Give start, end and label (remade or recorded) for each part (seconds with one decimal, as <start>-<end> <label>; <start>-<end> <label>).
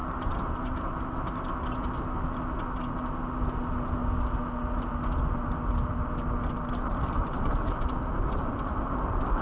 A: 0.0-9.4 recorded